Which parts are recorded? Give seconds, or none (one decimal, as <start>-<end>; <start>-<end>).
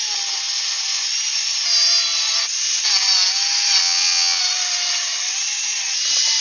0.0-3.8; 4.4-6.4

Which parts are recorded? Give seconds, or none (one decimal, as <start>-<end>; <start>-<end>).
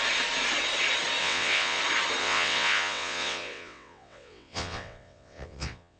0.0-1.2; 1.8-2.2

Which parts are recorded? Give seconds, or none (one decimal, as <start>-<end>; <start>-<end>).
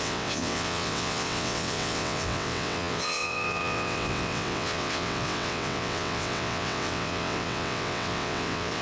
none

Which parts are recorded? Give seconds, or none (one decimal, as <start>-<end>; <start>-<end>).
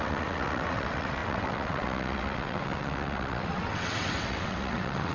none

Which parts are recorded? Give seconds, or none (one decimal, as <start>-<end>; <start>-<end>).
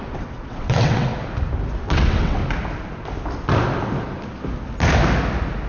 1.1-1.8; 2.4-5.7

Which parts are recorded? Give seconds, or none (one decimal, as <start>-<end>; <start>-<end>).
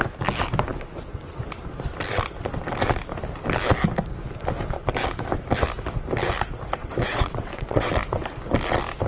0.0-6.8; 7.9-9.1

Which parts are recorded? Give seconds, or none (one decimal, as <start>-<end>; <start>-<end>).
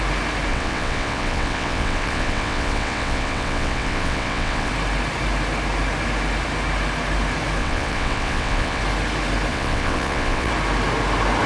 0.0-0.5; 4.7-7.6; 8.8-9.5; 10.5-11.5